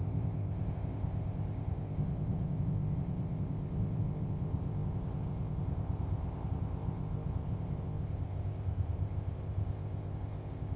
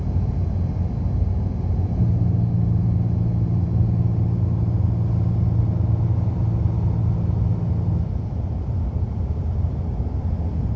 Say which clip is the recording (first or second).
second